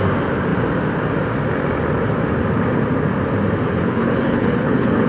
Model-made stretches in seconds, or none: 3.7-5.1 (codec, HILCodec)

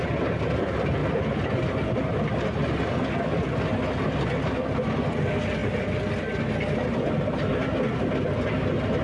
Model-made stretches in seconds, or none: none

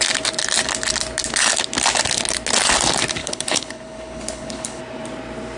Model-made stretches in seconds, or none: 3.2-4.8 (codec, HILCodec)

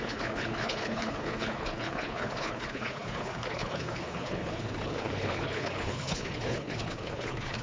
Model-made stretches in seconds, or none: 0.0-7.6 (codec, HILCodec)

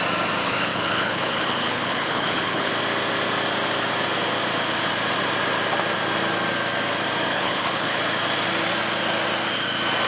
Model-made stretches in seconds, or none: 0.4-2.7 (codec, HILCodec); 7.3-8.0

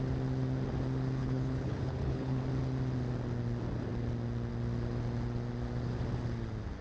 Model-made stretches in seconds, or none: 1.2-2.4 (codec, HILCodec)

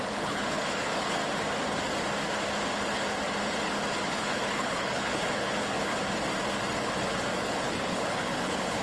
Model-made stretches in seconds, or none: 0.0-1.2 (codec, HILCodec); 4.1-5.9; 7.4-8.8